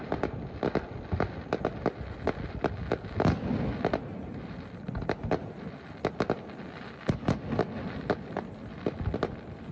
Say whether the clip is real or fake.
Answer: real